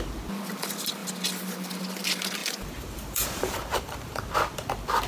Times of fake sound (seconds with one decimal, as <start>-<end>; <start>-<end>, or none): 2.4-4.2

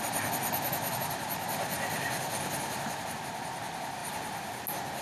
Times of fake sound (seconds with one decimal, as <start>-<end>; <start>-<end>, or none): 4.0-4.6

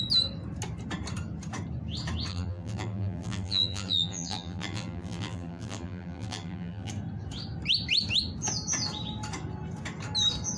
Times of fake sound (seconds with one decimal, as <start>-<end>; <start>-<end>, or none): 2.3-6.9

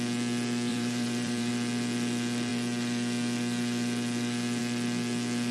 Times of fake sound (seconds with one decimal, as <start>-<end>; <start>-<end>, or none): 0.7-1.5